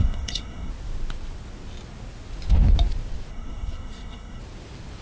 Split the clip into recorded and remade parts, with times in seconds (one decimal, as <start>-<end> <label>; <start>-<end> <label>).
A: 0.0-0.7 remade; 0.7-3.3 recorded; 3.3-4.4 remade; 4.4-5.0 recorded